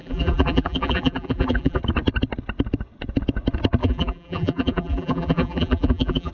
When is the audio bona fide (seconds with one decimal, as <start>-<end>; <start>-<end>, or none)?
1.8-3.8